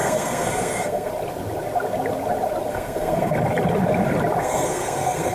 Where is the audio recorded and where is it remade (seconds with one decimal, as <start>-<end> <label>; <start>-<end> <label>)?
0.0-1.1 remade; 1.1-2.7 recorded; 2.7-3.3 remade; 3.3-4.4 recorded; 4.4-5.3 remade